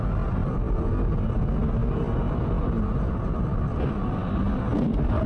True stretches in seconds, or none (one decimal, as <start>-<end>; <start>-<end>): 0.0-5.3